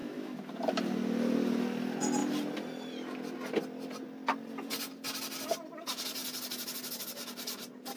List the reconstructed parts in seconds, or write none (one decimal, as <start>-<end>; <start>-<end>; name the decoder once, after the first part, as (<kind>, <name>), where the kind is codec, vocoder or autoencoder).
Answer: 0.0-0.5 (autoencoder, DAC-VAE)